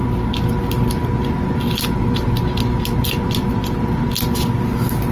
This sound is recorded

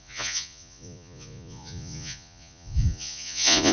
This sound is remade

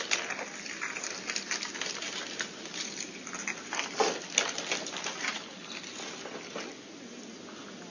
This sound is recorded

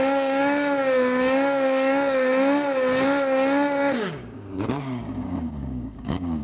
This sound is remade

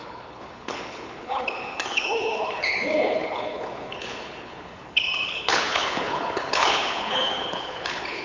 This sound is remade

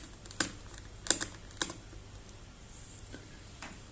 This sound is recorded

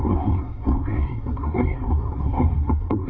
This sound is remade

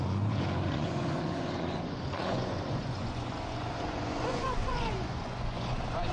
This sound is remade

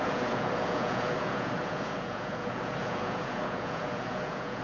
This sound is remade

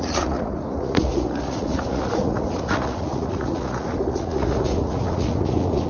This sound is remade